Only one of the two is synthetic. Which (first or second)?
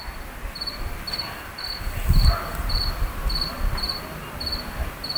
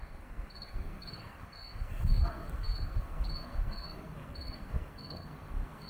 second